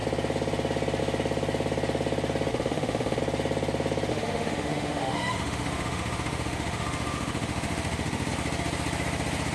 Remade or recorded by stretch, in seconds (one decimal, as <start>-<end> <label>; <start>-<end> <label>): 0.0-2.5 recorded; 2.5-3.2 remade; 3.2-4.1 recorded; 4.1-8.3 remade; 8.3-9.5 recorded